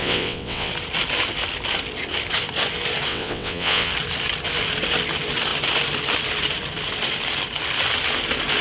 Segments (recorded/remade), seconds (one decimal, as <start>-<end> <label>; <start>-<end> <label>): 0.0-0.7 remade; 0.7-3.1 recorded; 3.1-3.9 remade; 3.9-8.6 recorded